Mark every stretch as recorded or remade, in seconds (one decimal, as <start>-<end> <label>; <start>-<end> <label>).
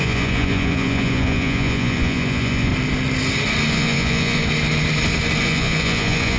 0.0-2.7 remade; 2.7-3.7 recorded; 3.7-4.4 remade; 4.4-5.4 recorded; 5.4-6.4 remade